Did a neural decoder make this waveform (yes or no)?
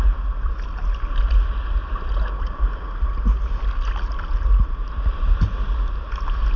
no